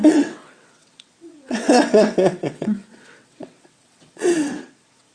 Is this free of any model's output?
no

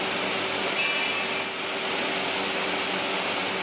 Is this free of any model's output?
yes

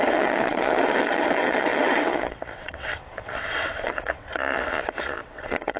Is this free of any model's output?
no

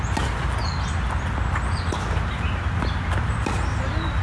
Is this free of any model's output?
yes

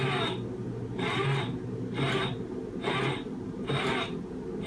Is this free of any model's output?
yes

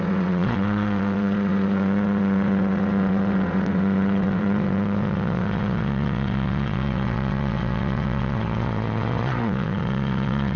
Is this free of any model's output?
no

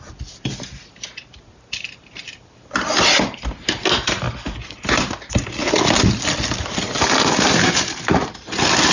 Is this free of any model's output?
yes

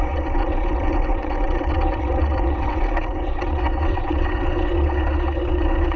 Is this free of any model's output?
no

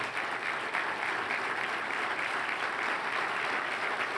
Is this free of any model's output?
yes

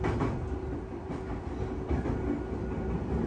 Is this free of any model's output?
yes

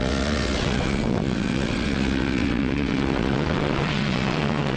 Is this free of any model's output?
no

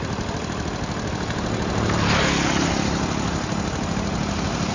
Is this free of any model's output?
yes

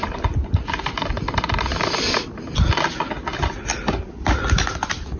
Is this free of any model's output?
yes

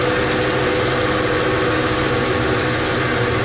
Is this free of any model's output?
yes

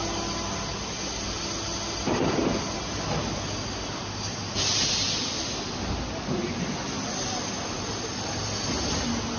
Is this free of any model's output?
yes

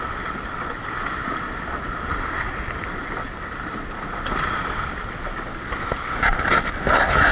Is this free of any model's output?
yes